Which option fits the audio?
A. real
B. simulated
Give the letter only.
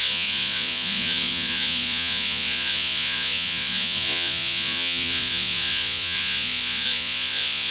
B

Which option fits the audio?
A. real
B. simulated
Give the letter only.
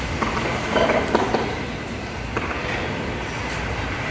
A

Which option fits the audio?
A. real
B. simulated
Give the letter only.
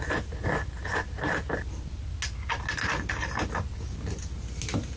A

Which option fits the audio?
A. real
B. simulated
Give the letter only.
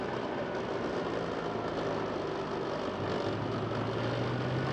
A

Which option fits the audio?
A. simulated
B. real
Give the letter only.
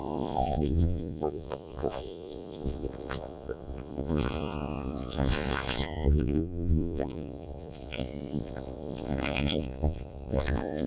A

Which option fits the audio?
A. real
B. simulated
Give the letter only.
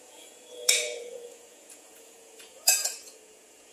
B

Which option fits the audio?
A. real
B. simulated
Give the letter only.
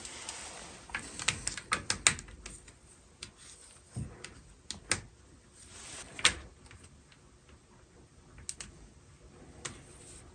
A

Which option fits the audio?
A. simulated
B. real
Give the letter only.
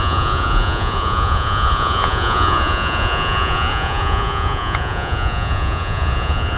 A